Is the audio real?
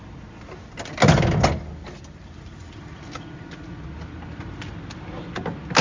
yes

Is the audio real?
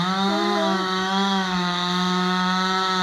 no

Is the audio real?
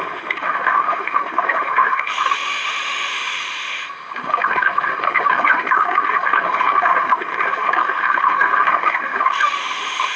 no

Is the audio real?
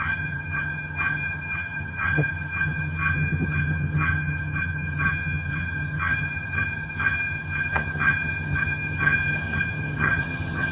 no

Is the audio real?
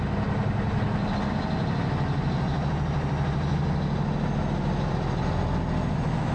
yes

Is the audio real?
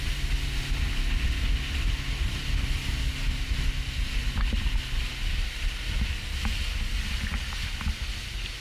yes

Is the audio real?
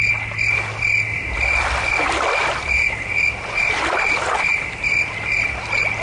yes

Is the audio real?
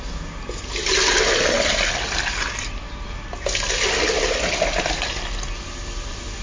yes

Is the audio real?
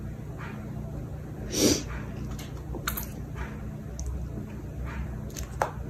yes